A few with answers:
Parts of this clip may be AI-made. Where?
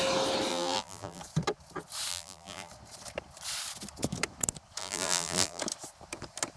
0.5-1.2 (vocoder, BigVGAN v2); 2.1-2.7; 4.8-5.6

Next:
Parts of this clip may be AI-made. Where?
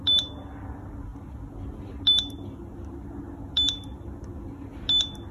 none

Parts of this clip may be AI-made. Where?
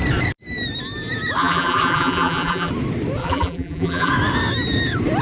1.4-2.7 (vocoder, BigVGAN v2); 3.2-4.1